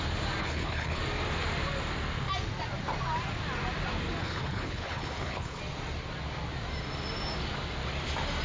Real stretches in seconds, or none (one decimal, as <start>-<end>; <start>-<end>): 0.0-0.4; 1.0-4.2; 5.6-8.4